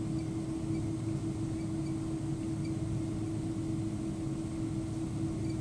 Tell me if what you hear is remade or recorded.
recorded